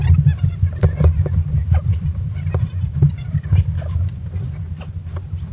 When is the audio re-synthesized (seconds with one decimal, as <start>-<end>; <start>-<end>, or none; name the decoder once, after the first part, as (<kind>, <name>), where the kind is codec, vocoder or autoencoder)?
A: 1.6-4.9 (vocoder, BigVGAN v2)